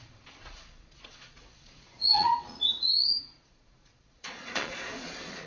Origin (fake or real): fake